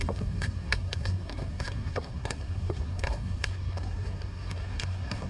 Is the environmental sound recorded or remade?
remade